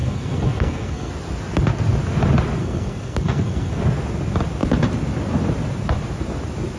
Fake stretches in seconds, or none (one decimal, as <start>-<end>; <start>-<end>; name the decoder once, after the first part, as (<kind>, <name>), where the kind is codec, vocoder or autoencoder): 0.0-1.1 (codec, SNAC); 2.6-3.8